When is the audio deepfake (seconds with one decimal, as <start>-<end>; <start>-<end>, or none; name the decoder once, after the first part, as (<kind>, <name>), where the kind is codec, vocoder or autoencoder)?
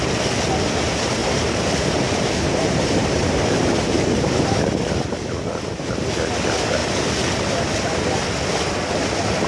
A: 1.2-4.6 (vocoder, BigVGAN v2)